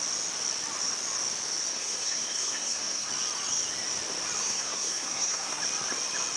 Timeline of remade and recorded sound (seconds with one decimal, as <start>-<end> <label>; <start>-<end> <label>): 0.0-1.7 recorded; 1.7-3.1 remade; 3.1-4.4 recorded; 4.4-5.6 remade; 5.6-6.4 recorded